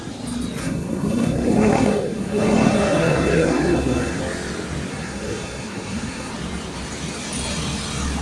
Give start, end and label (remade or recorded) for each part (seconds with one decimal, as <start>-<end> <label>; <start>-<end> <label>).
0.0-0.6 recorded; 0.6-4.2 remade; 4.2-4.9 recorded; 4.9-6.3 remade; 6.3-8.2 recorded

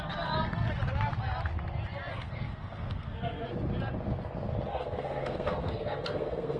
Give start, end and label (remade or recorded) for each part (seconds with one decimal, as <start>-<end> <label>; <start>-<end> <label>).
0.0-2.1 recorded; 2.1-3.5 remade; 3.5-4.7 recorded; 4.7-6.6 remade